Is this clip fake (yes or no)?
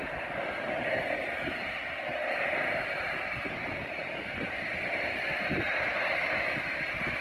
no